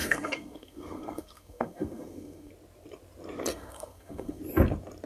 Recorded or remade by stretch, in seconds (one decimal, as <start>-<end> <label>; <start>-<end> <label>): 0.0-2.5 remade; 2.5-3.5 recorded; 3.5-4.4 remade; 4.4-5.0 recorded